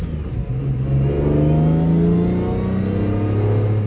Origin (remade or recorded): recorded